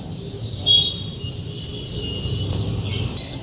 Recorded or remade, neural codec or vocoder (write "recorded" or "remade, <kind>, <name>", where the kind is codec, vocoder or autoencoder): recorded